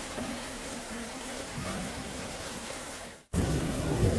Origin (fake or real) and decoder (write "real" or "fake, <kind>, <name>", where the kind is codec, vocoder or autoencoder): fake, codec, SNAC